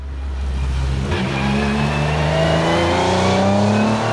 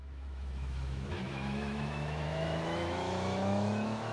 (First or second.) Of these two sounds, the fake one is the second